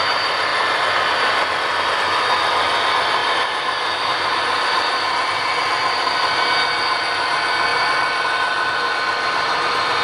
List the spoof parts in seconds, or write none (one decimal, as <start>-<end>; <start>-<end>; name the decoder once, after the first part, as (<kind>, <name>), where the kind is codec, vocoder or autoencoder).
0.5-1.6 (vocoder, BigVGAN v2); 3.2-6.1; 7.7-8.9